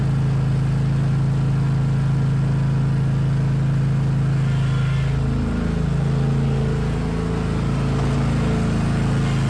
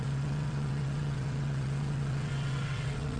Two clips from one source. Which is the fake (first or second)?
second